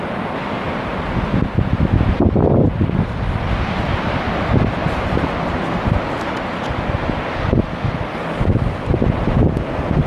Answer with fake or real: real